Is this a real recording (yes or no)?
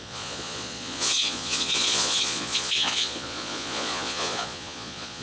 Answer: no